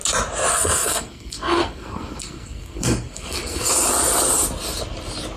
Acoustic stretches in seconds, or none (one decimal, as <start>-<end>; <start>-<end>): 0.0-0.5; 3.7-5.4